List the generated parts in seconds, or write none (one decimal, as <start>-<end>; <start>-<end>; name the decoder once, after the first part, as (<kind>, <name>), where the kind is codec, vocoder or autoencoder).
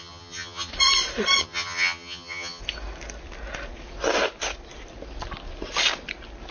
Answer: 0.0-0.7 (vocoder, HiFi-GAN); 1.4-2.6